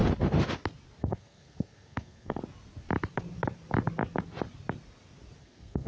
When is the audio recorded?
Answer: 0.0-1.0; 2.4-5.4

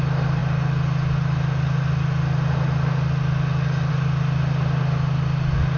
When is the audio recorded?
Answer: 0.0-5.8

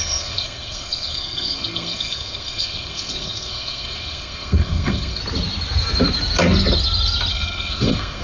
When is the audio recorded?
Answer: 5.2-7.3

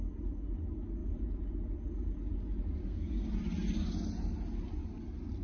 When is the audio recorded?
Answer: 0.0-2.8; 3.3-5.4